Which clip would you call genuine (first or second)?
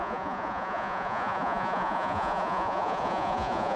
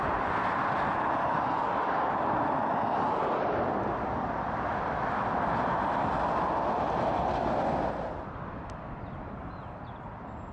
second